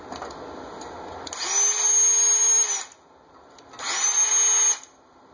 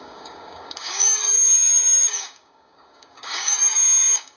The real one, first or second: first